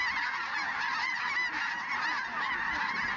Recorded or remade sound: recorded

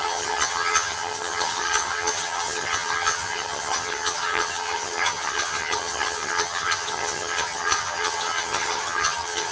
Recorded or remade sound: remade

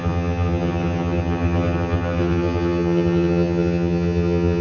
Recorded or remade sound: remade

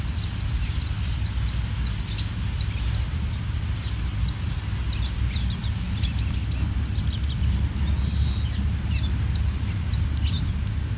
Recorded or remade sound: recorded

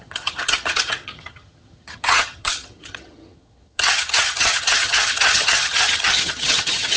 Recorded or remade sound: remade